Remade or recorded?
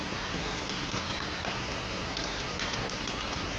remade